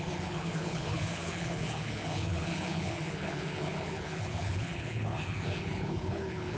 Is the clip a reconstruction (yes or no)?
yes